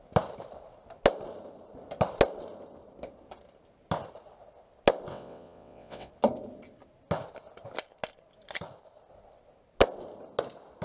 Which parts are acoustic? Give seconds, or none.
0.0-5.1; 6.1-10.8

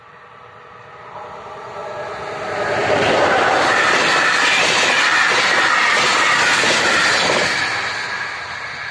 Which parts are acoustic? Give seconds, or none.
0.0-8.9